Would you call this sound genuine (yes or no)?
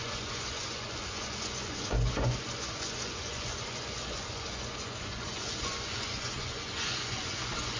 no